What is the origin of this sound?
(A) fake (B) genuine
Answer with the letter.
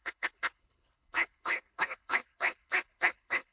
A